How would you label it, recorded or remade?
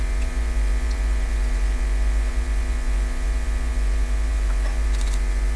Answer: remade